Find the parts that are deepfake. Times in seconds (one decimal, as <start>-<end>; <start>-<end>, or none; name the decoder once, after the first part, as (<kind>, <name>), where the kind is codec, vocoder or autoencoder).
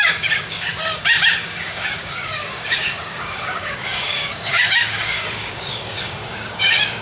0.0-7.0 (codec, DAC)